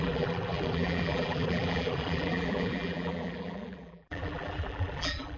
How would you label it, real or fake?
fake